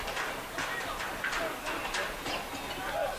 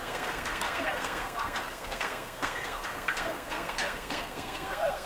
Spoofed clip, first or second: second